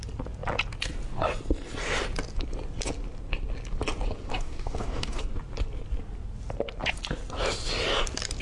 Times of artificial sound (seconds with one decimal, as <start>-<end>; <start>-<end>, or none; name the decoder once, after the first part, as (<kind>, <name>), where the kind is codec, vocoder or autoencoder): 4.3-5.2 (codec, DAC)